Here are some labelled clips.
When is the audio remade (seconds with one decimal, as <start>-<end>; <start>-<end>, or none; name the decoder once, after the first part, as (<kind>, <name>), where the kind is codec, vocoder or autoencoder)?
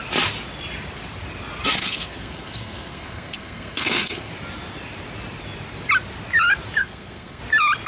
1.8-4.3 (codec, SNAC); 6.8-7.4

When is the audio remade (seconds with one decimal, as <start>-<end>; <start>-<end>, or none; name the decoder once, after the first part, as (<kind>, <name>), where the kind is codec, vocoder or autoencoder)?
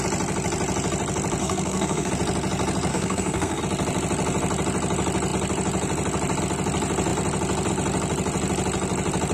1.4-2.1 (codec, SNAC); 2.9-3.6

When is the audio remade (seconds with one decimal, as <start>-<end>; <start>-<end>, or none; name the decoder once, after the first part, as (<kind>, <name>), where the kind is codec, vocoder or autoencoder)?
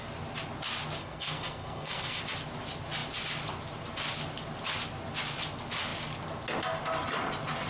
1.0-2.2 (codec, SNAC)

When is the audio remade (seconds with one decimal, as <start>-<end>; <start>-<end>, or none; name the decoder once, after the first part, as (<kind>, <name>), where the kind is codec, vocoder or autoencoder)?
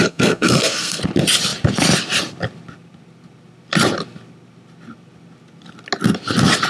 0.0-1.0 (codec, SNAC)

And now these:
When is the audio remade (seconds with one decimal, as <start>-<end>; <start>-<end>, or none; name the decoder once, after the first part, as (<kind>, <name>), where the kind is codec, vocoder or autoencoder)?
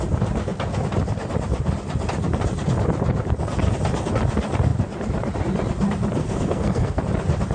6.2-7.0 (codec, SNAC)